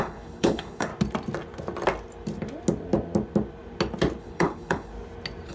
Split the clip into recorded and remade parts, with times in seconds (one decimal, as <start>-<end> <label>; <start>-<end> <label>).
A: 0.0-0.9 remade; 0.9-4.2 recorded; 4.2-4.9 remade; 4.9-5.5 recorded